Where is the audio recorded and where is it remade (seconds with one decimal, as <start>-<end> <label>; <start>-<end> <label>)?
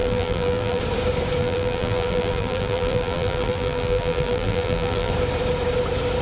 0.0-0.8 remade; 0.8-1.4 recorded; 1.4-5.1 remade; 5.1-6.2 recorded